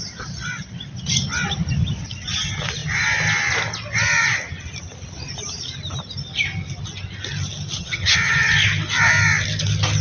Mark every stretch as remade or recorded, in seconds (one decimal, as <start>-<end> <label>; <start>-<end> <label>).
0.0-7.8 recorded; 7.8-8.5 remade; 8.5-10.0 recorded